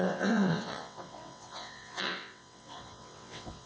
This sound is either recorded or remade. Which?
remade